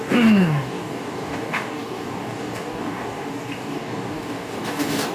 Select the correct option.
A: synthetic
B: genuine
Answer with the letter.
A